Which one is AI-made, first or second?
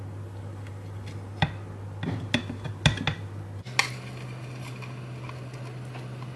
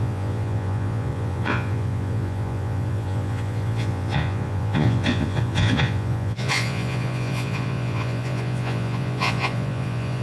second